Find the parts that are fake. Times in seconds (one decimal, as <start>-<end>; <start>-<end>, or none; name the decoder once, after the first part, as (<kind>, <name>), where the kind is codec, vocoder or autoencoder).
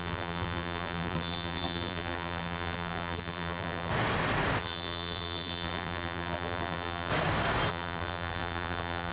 0.0-3.9 (vocoder, BigVGAN v2); 4.6-7.1; 7.7-9.1